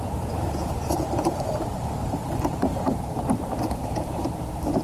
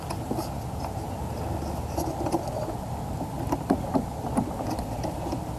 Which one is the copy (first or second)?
first